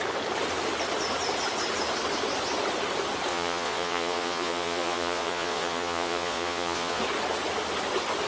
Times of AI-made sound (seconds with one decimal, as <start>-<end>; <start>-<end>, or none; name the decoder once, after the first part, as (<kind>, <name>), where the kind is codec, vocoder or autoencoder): 3.3-7.0 (vocoder, Vocos)